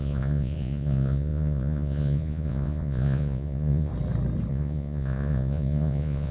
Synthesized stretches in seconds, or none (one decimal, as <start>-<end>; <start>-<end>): 0.0-3.9; 4.5-6.3